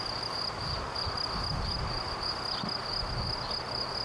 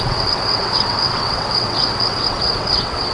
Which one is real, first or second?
first